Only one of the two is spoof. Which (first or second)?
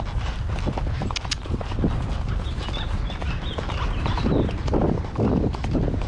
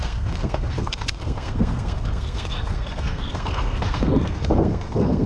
second